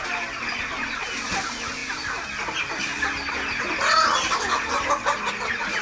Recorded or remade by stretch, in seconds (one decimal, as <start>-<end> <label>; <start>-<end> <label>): 0.0-5.8 recorded